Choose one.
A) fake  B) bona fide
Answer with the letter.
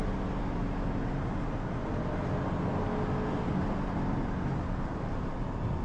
B